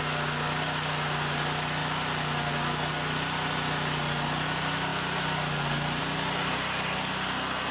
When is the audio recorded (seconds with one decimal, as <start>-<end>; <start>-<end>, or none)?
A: 0.0-7.7

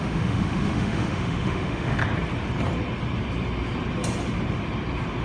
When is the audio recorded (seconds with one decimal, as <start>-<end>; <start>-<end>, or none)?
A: 2.0-5.2

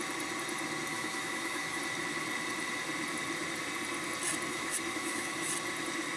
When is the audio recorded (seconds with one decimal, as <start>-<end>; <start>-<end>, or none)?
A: 0.0-0.9; 1.8-4.5; 5.5-6.2